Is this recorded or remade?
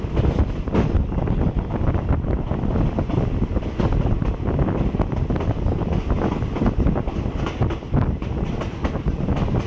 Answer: recorded